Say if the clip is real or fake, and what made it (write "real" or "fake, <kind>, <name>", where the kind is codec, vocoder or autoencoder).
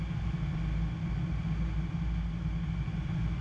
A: real